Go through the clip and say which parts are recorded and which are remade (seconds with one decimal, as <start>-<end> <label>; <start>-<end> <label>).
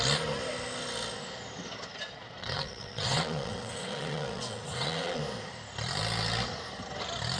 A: 0.0-2.4 recorded; 2.4-5.2 remade; 5.2-7.4 recorded